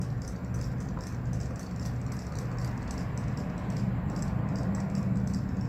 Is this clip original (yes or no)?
yes